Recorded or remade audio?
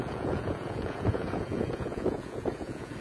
remade